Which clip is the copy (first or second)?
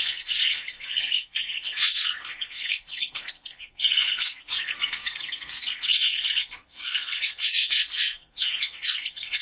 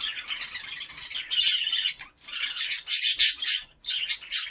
first